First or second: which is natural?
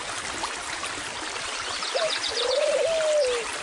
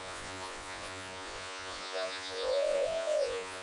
first